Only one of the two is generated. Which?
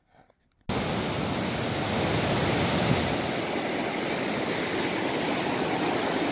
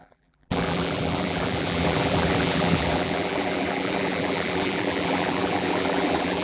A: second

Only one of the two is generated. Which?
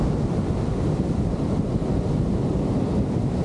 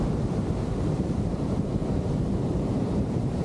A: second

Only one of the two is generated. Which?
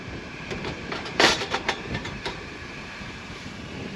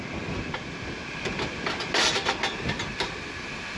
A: first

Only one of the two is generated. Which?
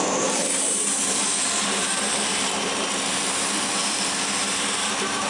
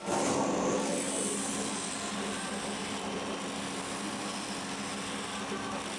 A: first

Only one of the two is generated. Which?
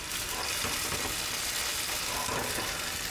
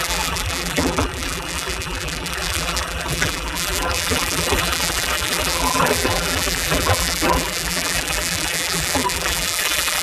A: second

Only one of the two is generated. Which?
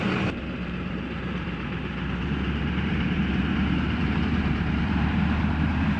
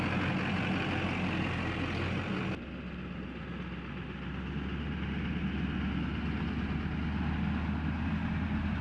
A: first